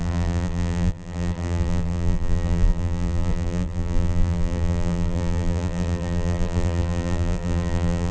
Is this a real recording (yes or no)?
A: no